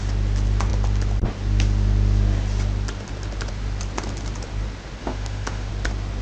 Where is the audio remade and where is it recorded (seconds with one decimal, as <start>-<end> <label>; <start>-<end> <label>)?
0.0-5.0 recorded; 5.0-5.7 remade; 5.7-6.2 recorded